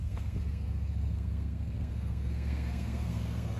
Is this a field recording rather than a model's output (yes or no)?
no